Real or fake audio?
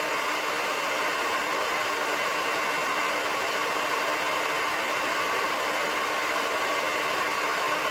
real